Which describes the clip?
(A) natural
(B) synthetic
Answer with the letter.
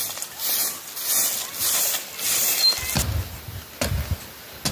A